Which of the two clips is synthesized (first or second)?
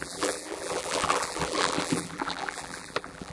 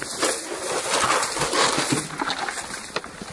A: first